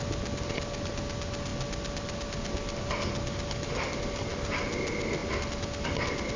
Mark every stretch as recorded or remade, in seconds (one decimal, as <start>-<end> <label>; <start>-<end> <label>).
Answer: 0.0-6.4 recorded